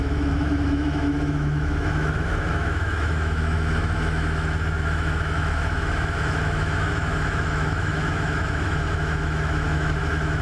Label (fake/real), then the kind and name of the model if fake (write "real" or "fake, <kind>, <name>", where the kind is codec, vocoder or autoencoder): fake, autoencoder, DAC-VAE